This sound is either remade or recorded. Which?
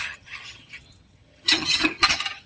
remade